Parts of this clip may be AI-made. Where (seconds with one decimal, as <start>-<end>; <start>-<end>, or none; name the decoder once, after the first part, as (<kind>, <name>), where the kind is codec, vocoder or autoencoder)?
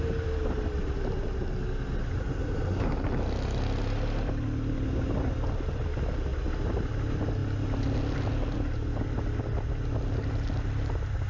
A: none